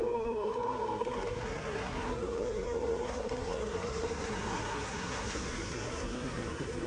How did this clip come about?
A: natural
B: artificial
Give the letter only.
B